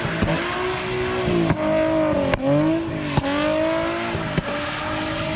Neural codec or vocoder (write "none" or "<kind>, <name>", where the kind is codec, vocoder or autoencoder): none